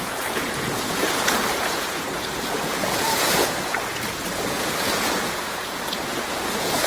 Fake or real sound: fake